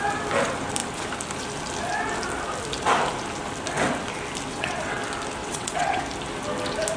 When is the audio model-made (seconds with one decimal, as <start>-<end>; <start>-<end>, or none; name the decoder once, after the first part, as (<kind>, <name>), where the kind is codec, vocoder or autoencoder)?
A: 4.5-5.0 (vocoder, WaveNeXt); 5.4-6.0